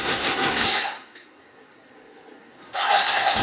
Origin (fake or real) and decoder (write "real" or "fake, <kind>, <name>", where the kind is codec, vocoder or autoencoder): fake, codec, SNAC